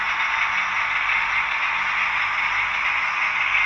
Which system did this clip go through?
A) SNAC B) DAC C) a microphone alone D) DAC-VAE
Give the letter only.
C